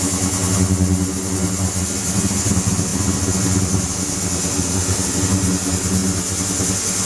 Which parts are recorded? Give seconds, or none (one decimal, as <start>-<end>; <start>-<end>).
0.0-7.0